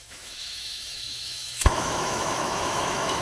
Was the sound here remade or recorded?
remade